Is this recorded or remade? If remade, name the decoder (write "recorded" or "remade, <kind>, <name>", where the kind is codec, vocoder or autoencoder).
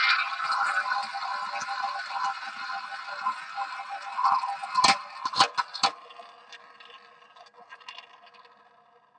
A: recorded